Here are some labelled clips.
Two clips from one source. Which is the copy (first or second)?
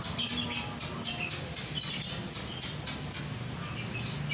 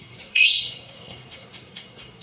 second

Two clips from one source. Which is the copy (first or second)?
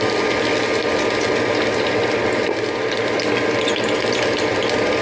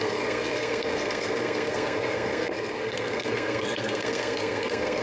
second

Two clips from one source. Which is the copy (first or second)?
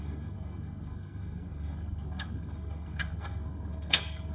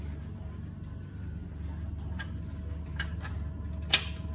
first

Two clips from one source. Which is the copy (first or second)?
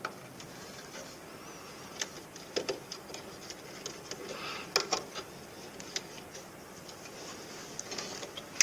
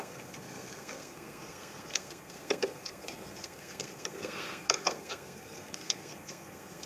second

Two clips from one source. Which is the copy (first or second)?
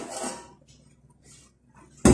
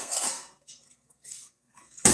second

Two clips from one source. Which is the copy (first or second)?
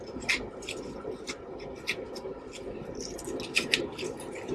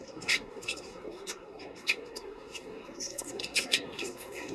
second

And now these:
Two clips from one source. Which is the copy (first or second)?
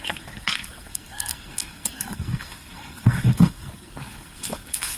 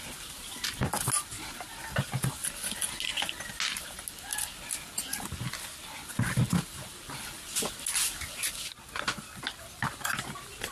first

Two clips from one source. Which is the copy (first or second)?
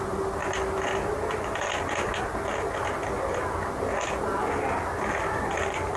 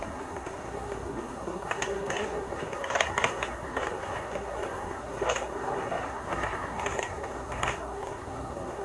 second